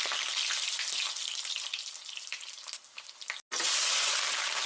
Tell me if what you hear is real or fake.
real